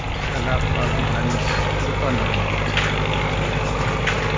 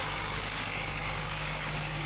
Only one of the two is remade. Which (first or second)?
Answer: second